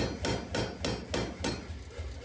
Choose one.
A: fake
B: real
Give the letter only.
B